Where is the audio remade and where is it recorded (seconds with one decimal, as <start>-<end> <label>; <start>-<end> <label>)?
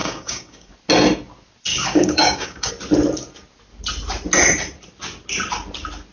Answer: 0.0-0.7 remade; 0.7-1.7 recorded; 1.7-2.7 remade; 2.7-6.1 recorded